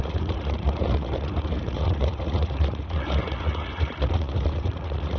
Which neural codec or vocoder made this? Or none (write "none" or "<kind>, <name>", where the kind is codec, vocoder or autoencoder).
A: vocoder, Vocos